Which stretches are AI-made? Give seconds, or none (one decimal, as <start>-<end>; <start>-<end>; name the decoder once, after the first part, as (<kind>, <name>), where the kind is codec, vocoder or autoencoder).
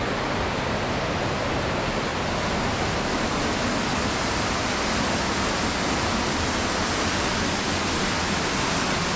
0.0-2.1 (vocoder, BigVGAN v2); 6.0-7.3